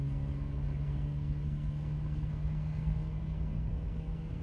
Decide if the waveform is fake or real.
fake